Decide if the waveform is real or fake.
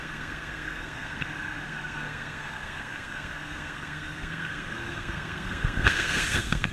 fake